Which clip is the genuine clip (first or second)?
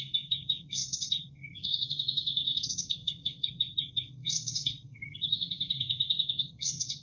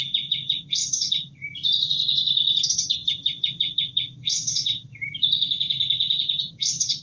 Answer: second